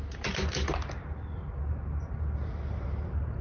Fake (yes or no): no